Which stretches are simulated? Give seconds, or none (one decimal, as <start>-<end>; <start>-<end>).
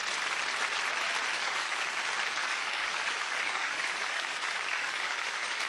1.3-2.0; 2.4-5.7